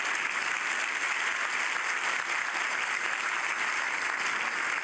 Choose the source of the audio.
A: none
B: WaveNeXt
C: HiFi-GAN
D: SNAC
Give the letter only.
A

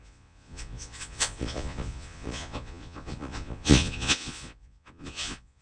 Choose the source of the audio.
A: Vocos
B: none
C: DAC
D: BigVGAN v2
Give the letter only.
A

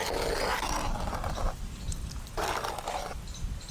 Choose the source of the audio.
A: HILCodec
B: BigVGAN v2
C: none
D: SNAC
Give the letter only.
C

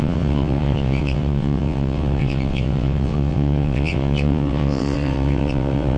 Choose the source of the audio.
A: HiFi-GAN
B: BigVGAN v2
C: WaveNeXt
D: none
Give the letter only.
C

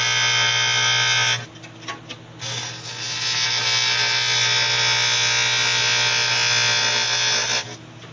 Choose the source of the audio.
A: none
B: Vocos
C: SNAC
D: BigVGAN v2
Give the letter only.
A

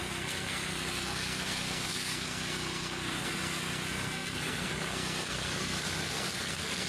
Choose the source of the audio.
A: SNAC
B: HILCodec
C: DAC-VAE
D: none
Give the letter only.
A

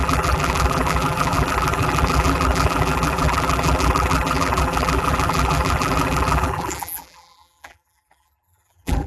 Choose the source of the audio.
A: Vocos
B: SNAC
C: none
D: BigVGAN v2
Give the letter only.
D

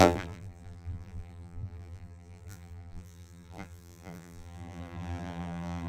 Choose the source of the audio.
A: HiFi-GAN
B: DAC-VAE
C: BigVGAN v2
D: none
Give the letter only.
C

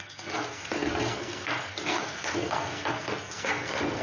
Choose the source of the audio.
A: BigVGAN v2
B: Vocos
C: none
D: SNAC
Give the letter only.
D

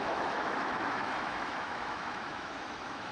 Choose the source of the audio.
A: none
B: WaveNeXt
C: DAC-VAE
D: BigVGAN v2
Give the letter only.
C